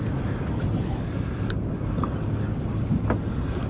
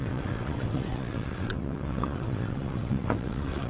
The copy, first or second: second